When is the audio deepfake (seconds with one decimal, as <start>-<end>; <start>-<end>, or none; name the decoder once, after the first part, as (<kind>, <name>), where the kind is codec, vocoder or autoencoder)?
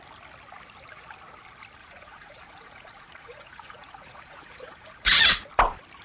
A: 1.8-5.4 (vocoder, Vocos)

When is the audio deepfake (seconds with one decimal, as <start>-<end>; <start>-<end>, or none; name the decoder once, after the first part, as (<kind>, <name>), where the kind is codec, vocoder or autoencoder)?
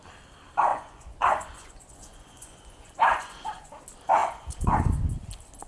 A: 0.7-3.7 (vocoder, Vocos); 4.2-5.1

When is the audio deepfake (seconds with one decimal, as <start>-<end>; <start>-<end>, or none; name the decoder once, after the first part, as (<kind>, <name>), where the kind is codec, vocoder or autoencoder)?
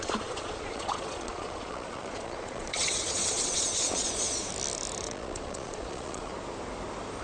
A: 0.0-4.5 (vocoder, Vocos); 5.0-6.3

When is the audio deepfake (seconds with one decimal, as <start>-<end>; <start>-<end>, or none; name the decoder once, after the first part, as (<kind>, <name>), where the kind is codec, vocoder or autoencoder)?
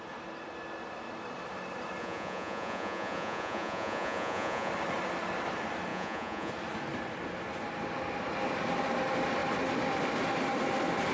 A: 2.0-4.7 (vocoder, Vocos); 5.9-6.5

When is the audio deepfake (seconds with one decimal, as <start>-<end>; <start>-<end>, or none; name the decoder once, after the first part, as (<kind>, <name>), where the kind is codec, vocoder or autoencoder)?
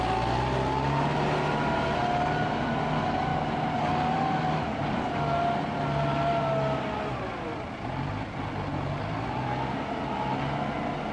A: none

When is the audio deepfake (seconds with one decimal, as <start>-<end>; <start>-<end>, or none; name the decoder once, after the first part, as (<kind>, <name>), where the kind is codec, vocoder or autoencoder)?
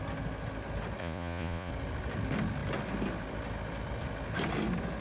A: 1.0-1.7 (vocoder, Vocos)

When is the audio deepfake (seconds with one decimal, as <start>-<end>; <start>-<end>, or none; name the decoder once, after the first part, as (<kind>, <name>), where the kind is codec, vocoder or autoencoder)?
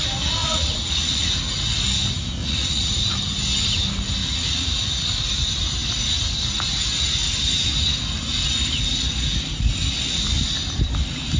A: 0.4-1.3 (vocoder, Vocos); 2.4-2.9; 4.2-5.1